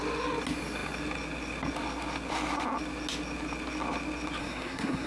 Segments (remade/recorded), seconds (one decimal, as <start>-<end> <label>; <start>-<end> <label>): 0.0-4.4 recorded; 4.4-5.1 remade

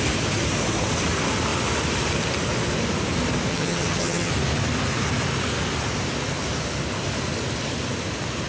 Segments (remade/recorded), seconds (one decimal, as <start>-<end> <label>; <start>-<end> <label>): 0.0-3.5 recorded; 3.5-4.3 remade; 4.3-8.5 recorded

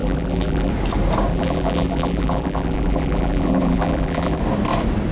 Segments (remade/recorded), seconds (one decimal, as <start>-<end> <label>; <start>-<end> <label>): 0.0-0.7 remade; 0.7-1.3 recorded; 1.3-4.4 remade; 4.4-5.1 recorded

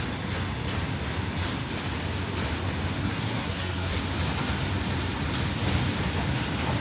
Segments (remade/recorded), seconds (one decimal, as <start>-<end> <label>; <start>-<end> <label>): 0.0-3.0 recorded; 3.0-4.0 remade; 4.0-6.8 recorded